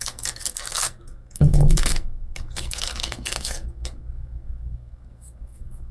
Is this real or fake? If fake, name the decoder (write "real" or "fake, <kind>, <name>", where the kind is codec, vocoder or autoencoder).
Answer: fake, codec, SNAC